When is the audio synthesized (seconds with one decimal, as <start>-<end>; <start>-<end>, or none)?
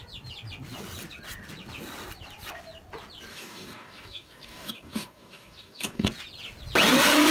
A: 3.3-6.1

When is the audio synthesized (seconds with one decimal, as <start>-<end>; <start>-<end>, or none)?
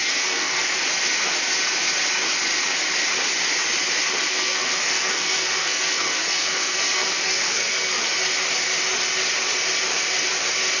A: 0.0-0.8; 4.3-8.0